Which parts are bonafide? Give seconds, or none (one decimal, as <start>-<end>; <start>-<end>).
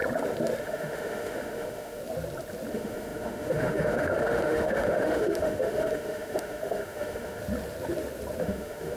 0.0-0.6; 2.0-2.7; 7.4-8.4